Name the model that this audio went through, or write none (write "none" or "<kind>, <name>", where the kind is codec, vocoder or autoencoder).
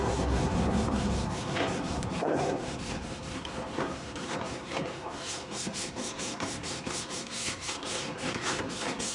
codec, SNAC